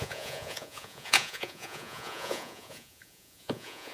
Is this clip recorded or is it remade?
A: remade